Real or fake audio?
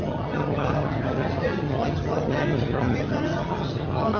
fake